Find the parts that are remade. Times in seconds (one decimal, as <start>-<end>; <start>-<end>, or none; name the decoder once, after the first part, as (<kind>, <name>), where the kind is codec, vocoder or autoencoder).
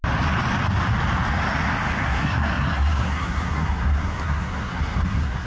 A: 2.0-5.5 (codec, SNAC)